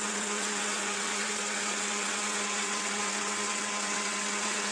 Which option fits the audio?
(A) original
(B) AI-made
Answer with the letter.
B